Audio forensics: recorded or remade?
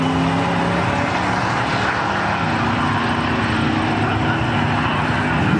recorded